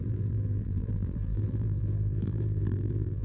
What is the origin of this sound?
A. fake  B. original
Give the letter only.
A